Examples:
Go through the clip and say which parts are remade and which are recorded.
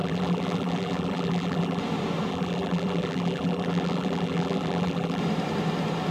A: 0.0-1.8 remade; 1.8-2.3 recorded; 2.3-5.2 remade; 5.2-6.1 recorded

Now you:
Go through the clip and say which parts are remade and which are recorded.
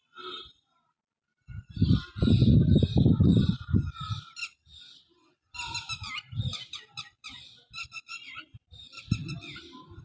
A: 0.0-3.3 remade; 3.3-4.1 recorded; 4.1-10.0 remade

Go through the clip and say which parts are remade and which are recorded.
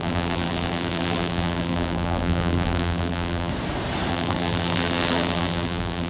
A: 0.0-3.5 remade; 3.5-4.1 recorded; 4.1-6.1 remade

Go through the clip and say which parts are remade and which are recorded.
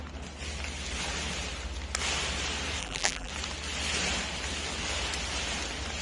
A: 0.0-2.8 recorded; 2.8-3.3 remade; 3.3-6.0 recorded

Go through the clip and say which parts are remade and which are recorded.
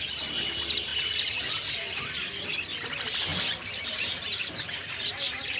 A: 0.0-3.3 recorded; 3.3-4.8 remade; 4.8-5.6 recorded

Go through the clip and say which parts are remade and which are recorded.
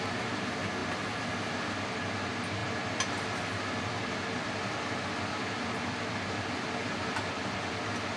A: 0.0-8.2 recorded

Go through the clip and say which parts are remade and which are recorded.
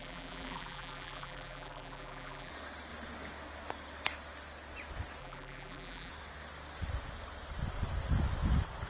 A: 0.0-2.5 remade; 2.5-5.2 recorded; 5.2-6.1 remade; 6.1-8.9 recorded